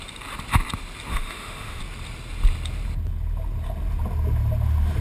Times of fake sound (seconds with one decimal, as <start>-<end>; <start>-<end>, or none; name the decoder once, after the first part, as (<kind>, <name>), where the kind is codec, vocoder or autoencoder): 1.1-1.8 (autoencoder, DAC-VAE)